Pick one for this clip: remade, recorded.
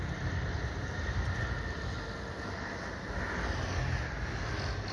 recorded